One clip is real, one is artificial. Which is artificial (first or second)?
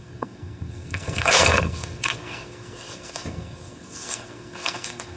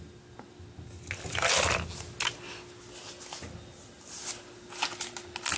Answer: first